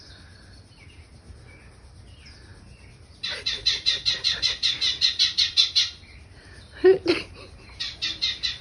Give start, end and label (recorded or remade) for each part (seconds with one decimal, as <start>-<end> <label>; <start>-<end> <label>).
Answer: 0.0-8.6 recorded